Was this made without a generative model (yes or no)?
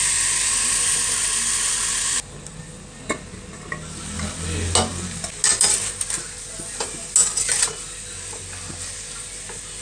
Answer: yes